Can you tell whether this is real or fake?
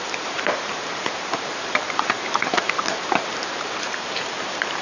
fake